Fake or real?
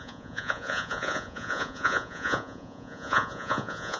fake